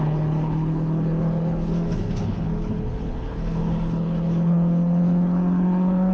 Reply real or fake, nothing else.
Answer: fake